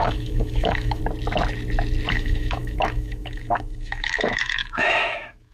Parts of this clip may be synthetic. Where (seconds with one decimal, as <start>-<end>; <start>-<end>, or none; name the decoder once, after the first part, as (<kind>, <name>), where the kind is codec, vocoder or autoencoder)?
0.0-1.0 (autoencoder, DAC-VAE); 2.1-5.5